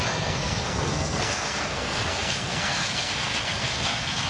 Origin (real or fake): fake